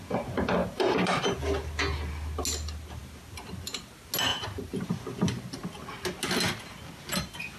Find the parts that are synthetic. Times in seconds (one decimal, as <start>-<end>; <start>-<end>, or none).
0.6-1.2; 4.3-4.9